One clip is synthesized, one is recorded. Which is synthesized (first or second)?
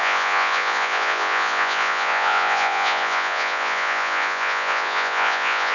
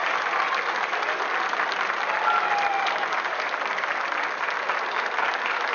first